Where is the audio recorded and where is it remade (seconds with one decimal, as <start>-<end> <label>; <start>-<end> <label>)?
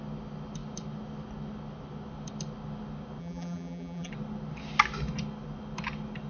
0.0-3.2 recorded; 3.2-4.1 remade; 4.1-6.3 recorded